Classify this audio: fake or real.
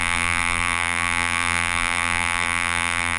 fake